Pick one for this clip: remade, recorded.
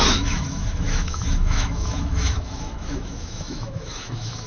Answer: remade